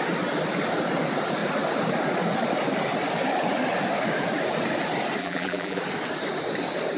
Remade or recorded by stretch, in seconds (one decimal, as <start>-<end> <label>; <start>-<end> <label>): 0.0-5.2 recorded; 5.2-5.8 remade; 5.8-7.0 recorded